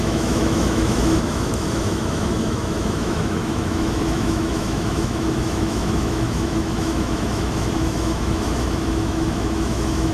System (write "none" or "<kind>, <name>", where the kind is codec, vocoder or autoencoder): autoencoder, DAC-VAE